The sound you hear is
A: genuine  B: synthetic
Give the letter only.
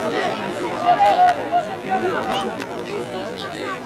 B